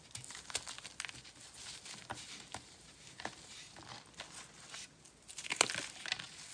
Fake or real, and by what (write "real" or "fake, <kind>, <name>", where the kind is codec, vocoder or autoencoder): real